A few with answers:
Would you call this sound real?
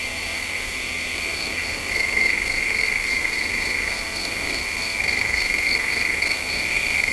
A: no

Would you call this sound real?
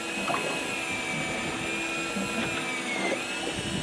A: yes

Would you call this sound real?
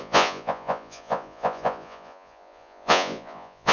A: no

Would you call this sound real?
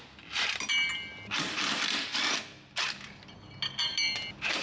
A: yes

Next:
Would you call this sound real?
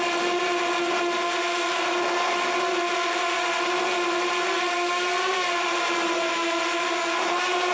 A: yes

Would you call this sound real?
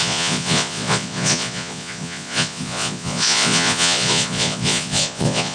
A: no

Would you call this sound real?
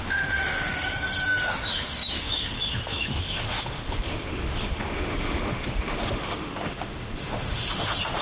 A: no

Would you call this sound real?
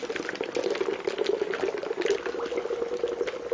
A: yes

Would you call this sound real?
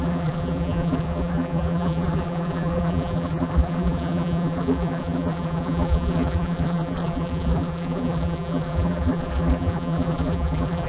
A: no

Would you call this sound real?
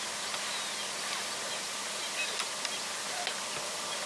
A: yes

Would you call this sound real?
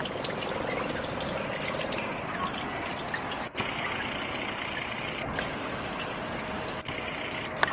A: yes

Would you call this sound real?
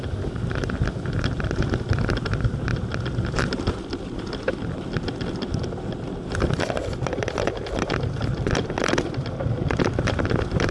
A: yes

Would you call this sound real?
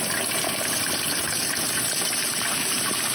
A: no